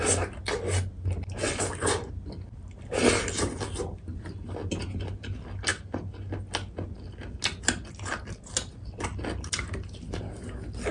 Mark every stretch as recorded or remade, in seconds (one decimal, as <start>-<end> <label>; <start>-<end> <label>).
0.0-10.9 recorded